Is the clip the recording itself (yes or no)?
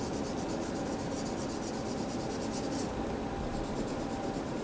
yes